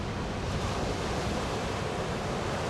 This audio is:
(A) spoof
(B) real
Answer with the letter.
B